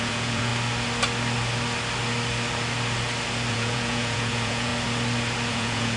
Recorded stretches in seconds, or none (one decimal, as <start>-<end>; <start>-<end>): 0.5-3.5; 4.7-5.5